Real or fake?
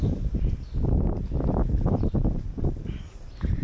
real